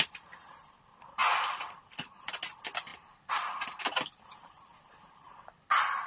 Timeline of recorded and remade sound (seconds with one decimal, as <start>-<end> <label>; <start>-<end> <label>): 0.0-6.1 recorded